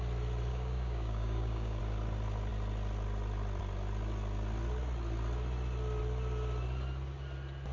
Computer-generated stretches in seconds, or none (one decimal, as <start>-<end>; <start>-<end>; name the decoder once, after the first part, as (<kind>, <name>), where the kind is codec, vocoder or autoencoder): 0.5-1.8 (codec, DAC)